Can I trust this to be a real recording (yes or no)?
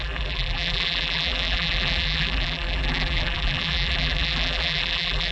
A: no